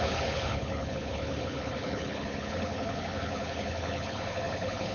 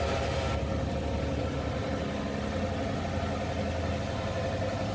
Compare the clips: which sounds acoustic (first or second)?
second